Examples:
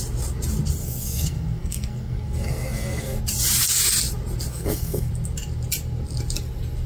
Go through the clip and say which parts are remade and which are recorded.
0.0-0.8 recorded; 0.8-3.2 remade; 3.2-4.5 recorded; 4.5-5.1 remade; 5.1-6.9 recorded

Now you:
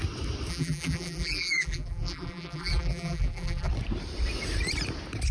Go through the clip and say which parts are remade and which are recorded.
0.0-0.5 recorded; 0.5-3.7 remade; 3.7-5.3 recorded

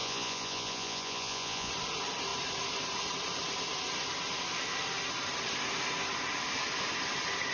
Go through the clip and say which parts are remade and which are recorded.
0.0-1.7 remade; 1.7-7.5 recorded